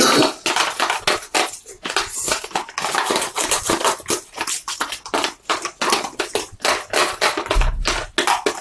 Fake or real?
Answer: real